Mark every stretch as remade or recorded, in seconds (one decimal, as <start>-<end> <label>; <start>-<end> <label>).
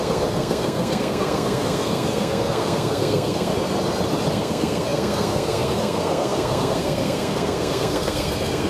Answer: 0.0-3.5 remade; 3.5-4.3 recorded; 4.3-8.7 remade